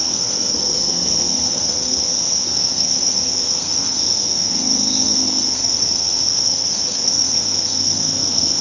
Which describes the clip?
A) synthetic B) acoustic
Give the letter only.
A